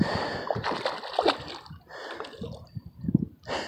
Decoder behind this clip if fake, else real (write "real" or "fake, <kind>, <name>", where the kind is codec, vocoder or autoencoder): real